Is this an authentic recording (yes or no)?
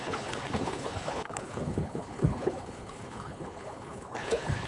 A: no